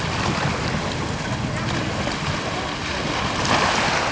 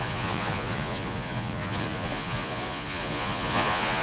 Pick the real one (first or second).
first